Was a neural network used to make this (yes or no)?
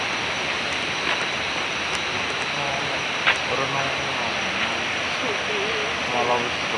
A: no